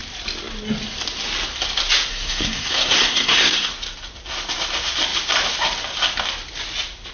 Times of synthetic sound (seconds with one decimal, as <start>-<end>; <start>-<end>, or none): 2.1-3.7